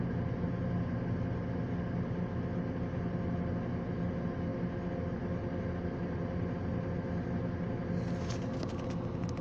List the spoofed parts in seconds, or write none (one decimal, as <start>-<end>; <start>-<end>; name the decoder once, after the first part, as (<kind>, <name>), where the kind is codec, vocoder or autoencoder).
none